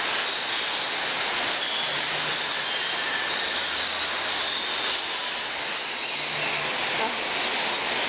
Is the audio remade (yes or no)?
no